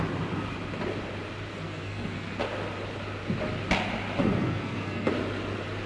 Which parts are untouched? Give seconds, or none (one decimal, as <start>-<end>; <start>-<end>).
0.0-1.5; 2.4-4.2; 5.1-5.9